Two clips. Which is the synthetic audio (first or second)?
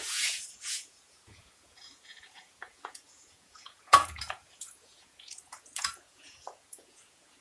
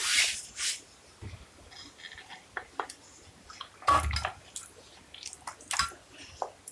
first